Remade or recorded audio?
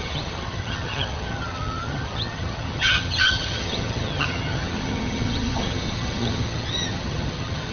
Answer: remade